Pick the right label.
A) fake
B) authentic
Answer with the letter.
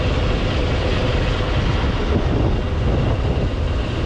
B